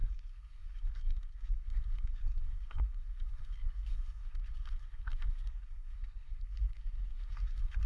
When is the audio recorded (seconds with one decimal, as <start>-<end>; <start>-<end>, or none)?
none

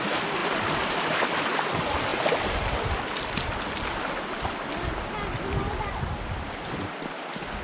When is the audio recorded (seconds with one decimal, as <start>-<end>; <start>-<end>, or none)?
0.0-7.6

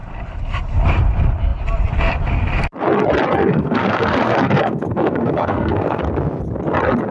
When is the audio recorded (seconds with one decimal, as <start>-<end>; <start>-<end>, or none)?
0.0-3.4; 6.0-7.1

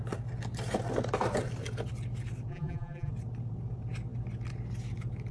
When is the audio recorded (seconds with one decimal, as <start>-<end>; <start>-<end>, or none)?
0.0-2.5; 3.1-5.3